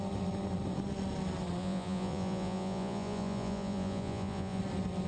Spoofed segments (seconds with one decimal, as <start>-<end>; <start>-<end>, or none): 1.6-4.6